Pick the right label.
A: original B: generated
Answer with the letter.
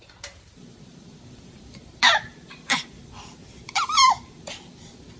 B